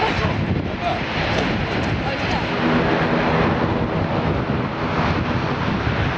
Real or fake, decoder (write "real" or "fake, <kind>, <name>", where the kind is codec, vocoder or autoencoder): real